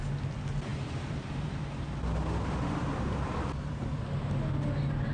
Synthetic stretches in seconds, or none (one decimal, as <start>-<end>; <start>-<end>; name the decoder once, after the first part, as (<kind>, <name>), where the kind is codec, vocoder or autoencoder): 0.7-3.7 (vocoder, BigVGAN v2)